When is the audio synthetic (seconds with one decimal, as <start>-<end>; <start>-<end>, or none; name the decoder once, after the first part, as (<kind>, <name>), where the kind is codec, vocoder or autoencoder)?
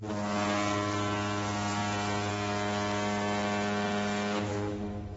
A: 4.5-5.2 (autoencoder, DAC-VAE)